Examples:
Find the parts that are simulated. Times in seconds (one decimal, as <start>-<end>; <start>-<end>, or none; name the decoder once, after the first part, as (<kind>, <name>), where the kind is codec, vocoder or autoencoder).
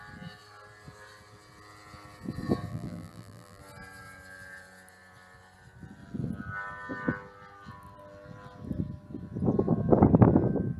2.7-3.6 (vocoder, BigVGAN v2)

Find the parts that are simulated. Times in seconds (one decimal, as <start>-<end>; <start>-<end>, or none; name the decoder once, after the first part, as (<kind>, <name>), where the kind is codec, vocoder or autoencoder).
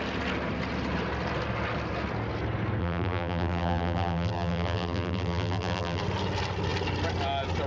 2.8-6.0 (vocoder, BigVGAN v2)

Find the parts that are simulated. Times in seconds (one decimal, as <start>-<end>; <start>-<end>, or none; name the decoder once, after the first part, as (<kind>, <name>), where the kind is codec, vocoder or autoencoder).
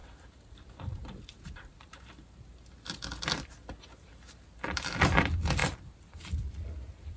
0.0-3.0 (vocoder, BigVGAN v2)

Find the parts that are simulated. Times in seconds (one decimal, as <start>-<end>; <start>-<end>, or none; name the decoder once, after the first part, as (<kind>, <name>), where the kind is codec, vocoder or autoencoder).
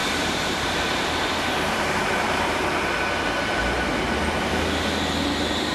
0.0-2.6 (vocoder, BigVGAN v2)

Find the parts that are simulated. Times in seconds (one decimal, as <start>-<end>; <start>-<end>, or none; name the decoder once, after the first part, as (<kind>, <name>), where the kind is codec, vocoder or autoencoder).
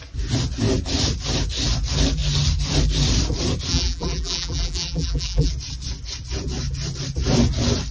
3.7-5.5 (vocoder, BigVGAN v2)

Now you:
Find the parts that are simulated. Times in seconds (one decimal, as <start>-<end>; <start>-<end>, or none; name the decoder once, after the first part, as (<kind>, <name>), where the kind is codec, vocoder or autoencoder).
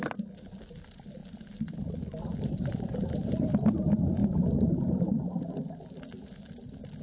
1.2-3.8 (vocoder, BigVGAN v2)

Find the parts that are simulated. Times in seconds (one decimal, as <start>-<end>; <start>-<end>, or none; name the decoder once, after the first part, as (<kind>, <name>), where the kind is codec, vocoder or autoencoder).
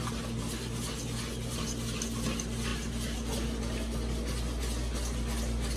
none